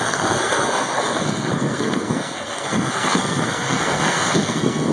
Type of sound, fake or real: fake